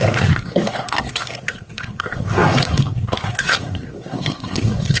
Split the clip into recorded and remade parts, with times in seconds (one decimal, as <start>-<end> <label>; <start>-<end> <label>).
0.0-5.0 remade